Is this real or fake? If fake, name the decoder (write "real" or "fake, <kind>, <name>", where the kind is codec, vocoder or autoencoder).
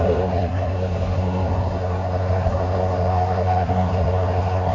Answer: fake, codec, SNAC